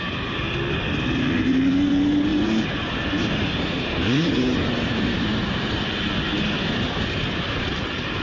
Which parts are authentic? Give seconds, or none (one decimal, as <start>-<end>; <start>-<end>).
0.0-2.3; 5.8-8.2